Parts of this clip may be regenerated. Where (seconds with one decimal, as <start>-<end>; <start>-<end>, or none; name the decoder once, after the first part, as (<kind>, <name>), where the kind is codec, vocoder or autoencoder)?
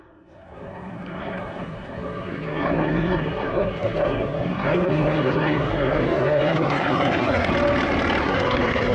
0.0-7.5 (codec, SNAC); 8.2-8.9